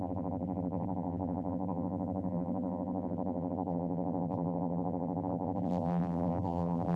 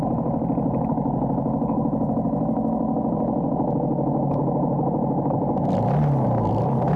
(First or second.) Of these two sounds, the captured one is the second